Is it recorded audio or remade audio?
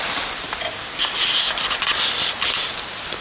recorded